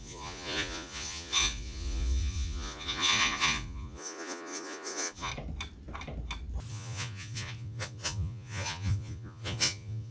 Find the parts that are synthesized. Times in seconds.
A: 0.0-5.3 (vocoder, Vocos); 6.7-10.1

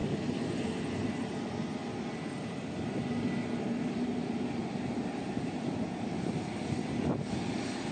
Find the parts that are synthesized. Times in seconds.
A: 4.6-6.5 (vocoder, BigVGAN v2)